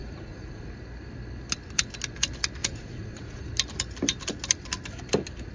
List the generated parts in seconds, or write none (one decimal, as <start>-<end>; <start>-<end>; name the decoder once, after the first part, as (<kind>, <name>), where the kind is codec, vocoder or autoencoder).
0.0-0.7 (vocoder, Vocos); 2.6-3.5